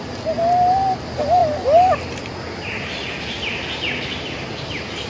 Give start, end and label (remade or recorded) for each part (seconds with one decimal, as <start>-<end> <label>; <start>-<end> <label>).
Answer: 0.0-5.1 recorded